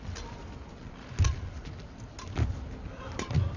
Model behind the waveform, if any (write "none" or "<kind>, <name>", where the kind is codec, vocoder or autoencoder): none